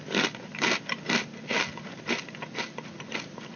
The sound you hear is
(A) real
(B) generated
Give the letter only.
A